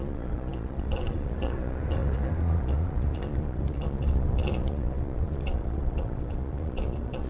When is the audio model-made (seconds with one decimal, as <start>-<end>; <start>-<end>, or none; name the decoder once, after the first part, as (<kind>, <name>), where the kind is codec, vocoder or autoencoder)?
0.0-7.3 (vocoder, Vocos)

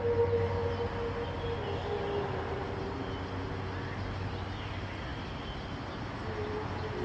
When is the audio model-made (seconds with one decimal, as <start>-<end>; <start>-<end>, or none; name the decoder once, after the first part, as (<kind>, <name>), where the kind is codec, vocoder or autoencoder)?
none

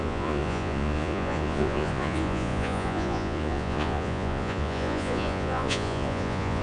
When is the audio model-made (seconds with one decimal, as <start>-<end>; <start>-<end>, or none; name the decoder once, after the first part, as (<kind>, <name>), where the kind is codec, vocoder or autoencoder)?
0.0-6.6 (vocoder, Vocos)

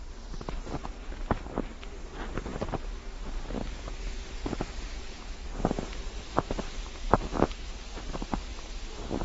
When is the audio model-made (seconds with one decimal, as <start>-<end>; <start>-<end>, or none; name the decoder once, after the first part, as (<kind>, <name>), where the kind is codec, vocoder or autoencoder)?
5.0-5.6 (vocoder, Vocos)

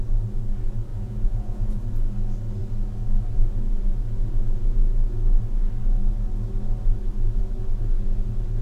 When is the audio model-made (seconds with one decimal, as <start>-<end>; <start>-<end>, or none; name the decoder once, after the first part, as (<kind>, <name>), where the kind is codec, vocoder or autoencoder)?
0.9-1.8 (vocoder, Vocos)

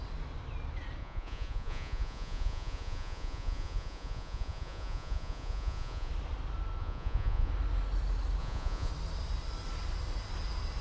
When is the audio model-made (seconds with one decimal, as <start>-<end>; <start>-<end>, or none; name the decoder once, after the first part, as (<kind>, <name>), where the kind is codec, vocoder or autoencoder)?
1.0-6.1 (vocoder, Vocos); 6.8-7.5; 8.4-8.9